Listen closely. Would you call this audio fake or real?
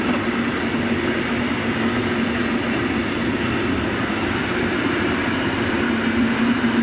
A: real